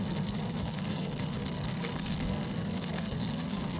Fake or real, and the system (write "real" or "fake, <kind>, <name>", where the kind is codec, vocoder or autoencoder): fake, codec, SNAC